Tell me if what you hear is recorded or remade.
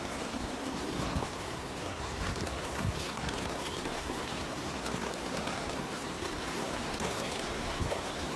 remade